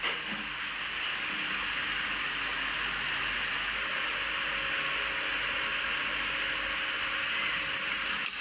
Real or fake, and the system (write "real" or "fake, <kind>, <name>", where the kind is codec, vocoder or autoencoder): real